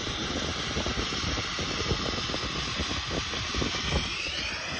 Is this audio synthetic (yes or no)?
no